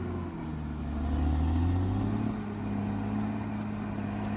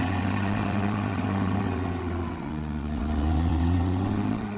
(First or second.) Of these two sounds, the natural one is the first